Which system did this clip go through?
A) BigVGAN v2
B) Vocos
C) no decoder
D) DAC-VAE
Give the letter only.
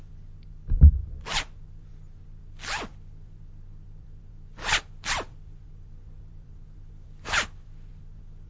A